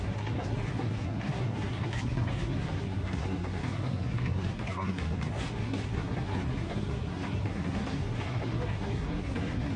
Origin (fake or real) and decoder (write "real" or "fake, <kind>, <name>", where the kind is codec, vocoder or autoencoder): fake, codec, SNAC